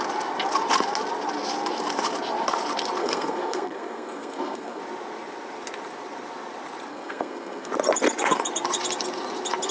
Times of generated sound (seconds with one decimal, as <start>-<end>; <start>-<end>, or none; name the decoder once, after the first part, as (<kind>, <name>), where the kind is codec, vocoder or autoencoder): 3.0-4.8 (codec, SNAC); 6.9-7.7